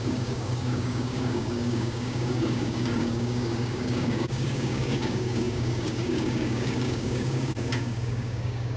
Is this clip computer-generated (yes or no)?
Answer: yes